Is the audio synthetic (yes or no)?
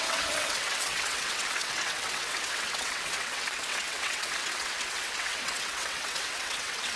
yes